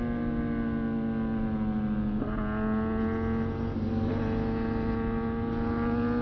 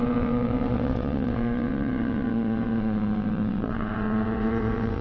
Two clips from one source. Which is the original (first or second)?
first